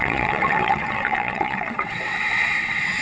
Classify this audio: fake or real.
fake